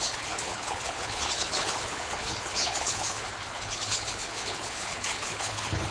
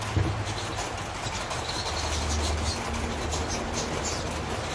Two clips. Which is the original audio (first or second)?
second